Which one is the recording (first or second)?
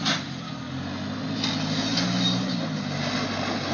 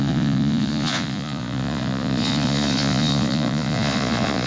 first